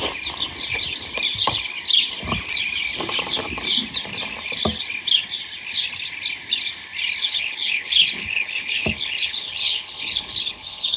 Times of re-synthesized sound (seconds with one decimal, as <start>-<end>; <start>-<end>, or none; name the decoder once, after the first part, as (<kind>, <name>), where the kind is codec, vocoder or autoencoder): 7.2-11.0 (codec, HILCodec)